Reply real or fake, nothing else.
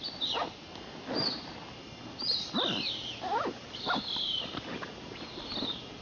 real